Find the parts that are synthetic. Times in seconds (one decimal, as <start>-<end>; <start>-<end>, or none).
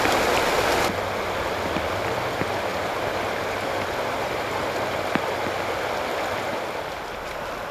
2.7-4.7